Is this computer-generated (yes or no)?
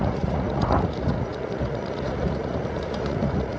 yes